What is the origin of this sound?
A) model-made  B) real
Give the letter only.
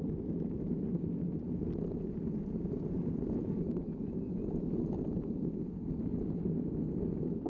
B